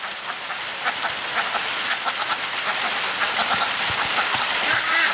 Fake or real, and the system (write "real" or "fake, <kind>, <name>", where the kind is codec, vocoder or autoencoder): real